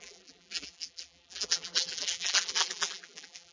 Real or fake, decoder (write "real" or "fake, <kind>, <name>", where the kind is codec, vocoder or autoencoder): fake, vocoder, BigVGAN v2